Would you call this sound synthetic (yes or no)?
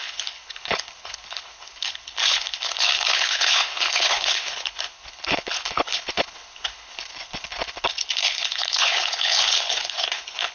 yes